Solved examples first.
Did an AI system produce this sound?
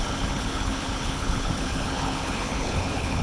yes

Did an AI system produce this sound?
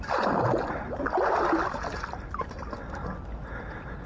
no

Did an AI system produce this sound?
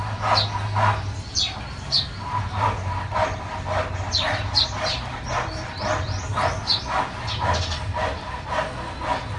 no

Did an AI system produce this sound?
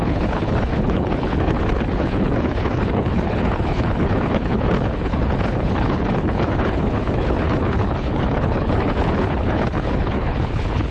yes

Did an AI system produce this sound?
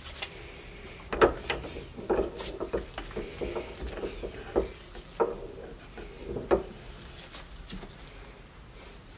no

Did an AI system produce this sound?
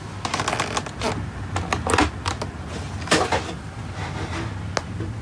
no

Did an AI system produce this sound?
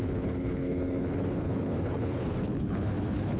yes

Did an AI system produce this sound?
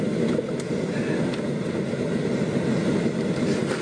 no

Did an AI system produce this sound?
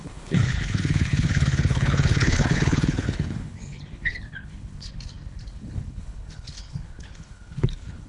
yes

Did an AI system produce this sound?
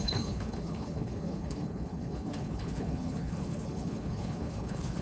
yes